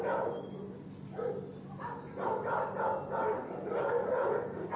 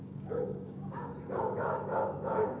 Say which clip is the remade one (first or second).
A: second